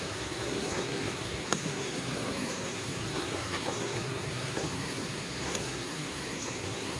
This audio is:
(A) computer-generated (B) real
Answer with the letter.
A